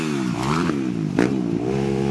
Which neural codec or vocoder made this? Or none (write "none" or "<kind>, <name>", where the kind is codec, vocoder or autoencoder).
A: none